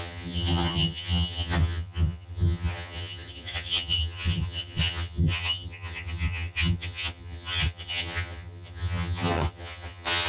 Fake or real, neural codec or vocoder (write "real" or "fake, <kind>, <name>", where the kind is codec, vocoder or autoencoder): fake, vocoder, HiFi-GAN